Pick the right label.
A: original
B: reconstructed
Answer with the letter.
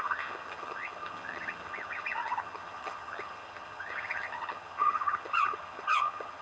B